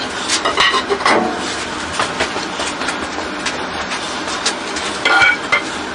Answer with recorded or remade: recorded